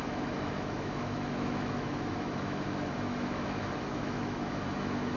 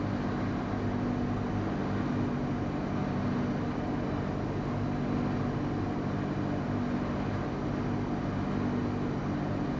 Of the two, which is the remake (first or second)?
first